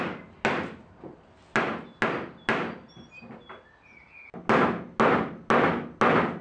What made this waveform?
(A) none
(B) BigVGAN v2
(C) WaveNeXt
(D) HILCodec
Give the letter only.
A